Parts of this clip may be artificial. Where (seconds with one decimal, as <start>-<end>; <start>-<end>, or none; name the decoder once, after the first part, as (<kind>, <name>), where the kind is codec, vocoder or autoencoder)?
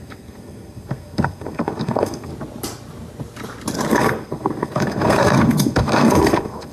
0.0-2.3 (codec, SNAC); 3.9-6.7